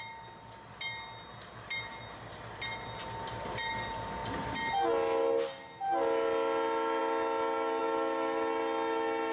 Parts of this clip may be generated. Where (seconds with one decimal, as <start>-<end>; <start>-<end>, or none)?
none